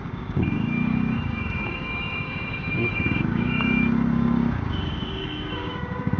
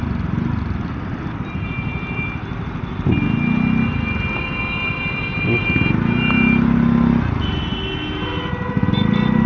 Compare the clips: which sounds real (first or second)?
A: second